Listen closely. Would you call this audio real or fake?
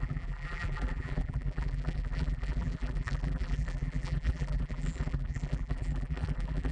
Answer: fake